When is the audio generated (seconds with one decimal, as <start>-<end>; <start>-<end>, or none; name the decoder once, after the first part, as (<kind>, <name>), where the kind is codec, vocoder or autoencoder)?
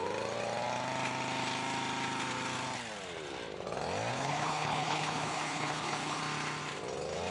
4.1-6.2 (codec, HILCodec)